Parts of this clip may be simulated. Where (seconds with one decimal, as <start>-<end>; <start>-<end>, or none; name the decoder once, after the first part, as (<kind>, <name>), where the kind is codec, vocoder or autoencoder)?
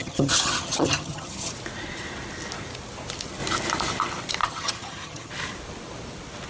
0.0-1.5 (vocoder, HiFi-GAN); 4.4-5.3